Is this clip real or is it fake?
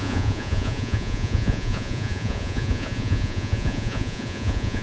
fake